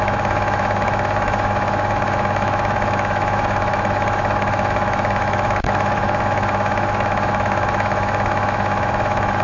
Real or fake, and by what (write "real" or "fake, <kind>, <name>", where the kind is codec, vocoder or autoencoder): fake, autoencoder, DAC-VAE